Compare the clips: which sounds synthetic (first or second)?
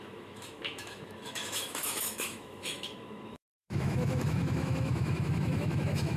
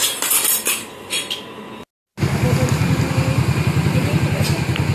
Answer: first